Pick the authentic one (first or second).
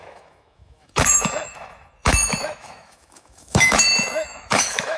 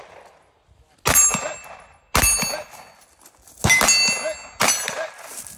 second